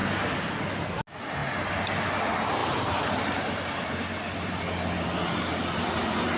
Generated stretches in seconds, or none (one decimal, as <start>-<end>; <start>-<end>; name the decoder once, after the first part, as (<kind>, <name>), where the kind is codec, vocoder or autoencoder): 2.6-4.6 (vocoder, BigVGAN v2)